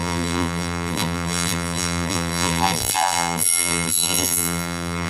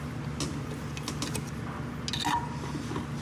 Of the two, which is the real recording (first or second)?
second